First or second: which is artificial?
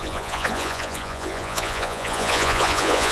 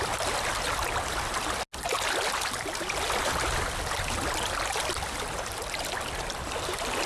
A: first